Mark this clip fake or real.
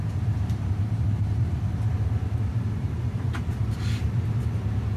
fake